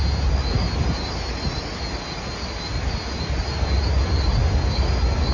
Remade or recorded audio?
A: recorded